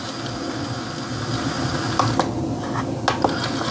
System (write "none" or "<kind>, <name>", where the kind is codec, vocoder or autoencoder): none